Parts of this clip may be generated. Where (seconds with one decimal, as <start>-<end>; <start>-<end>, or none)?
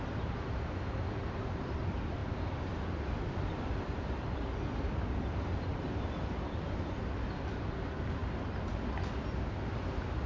none